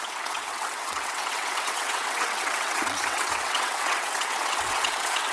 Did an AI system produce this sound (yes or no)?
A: yes